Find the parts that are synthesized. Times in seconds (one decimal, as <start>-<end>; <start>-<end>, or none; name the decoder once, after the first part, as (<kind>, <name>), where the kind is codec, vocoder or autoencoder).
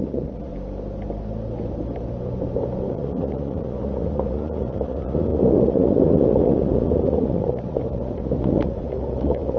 0.0-0.5 (vocoder, Vocos); 2.9-9.6